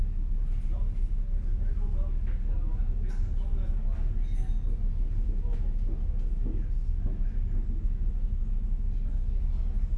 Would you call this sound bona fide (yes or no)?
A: yes